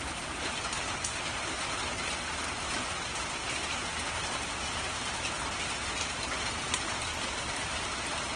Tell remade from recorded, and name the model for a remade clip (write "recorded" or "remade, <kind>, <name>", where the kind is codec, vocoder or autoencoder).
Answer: recorded